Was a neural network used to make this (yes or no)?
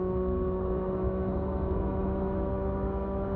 yes